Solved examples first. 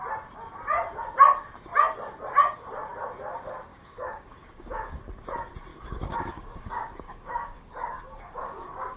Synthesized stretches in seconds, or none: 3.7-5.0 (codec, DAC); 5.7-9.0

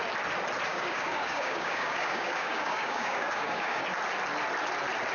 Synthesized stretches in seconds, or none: 0.7-3.8 (codec, DAC)